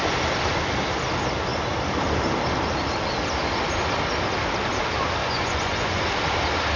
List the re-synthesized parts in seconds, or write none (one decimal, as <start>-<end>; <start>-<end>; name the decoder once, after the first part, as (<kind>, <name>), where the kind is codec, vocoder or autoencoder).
5.2-6.0 (vocoder, Vocos)